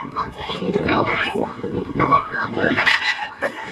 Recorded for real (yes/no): no